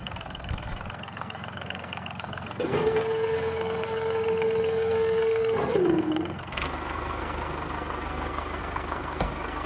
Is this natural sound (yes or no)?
no